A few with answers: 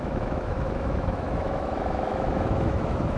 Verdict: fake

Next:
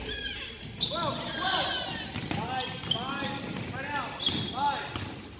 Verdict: real